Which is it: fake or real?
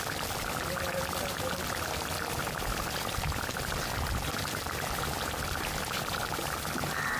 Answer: real